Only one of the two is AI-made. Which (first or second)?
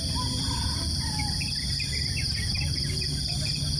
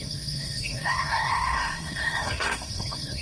second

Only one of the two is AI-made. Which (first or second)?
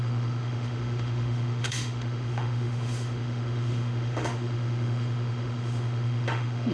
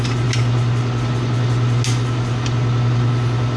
first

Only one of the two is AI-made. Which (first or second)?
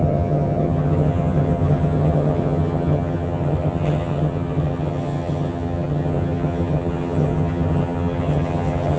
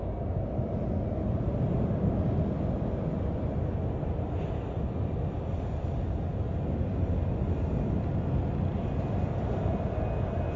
first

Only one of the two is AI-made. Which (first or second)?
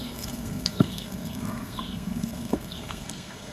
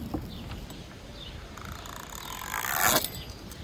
first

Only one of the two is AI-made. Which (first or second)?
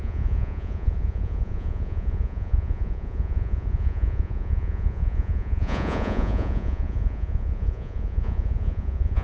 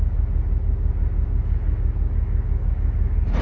first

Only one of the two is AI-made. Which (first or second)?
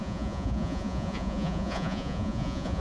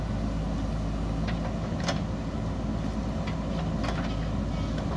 first